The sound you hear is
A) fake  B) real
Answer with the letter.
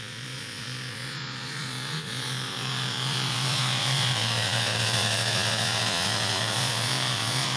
A